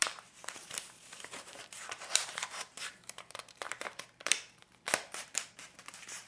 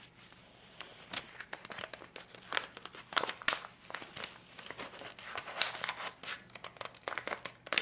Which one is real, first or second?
second